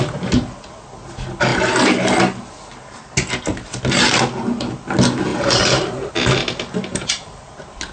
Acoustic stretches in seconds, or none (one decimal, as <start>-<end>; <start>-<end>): 0.0-5.3; 6.1-6.9; 7.5-7.9